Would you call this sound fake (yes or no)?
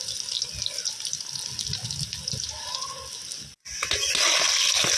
no